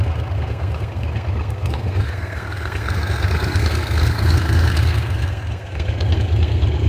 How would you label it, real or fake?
fake